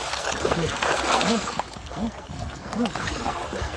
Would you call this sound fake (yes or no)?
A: yes